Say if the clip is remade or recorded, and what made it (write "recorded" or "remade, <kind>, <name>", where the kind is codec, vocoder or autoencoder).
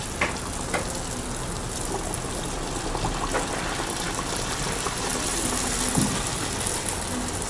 recorded